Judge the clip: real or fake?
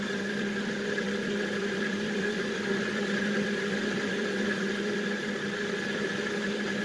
fake